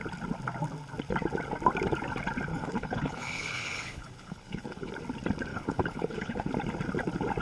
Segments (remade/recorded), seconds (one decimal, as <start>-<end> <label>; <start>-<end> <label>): 0.0-2.5 recorded; 2.5-4.9 remade; 4.9-5.5 recorded; 5.5-6.5 remade; 6.5-7.4 recorded